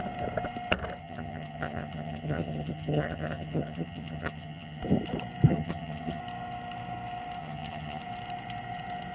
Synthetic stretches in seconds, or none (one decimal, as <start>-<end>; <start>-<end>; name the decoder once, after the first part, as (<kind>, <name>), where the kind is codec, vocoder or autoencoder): 1.0-4.8 (vocoder, HiFi-GAN); 5.5-6.2; 7.4-8.0